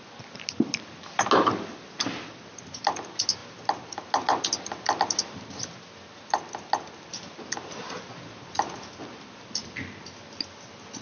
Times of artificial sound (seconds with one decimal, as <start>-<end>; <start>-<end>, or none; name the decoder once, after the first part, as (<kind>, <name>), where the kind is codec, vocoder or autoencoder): none